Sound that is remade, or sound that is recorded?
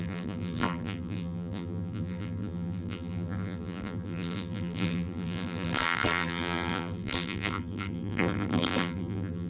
remade